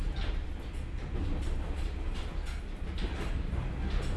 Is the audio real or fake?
real